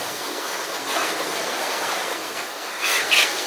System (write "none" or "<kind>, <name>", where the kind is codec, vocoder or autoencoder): codec, SNAC